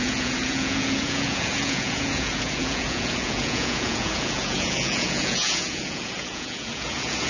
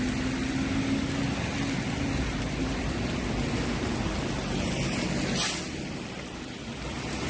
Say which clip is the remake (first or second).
first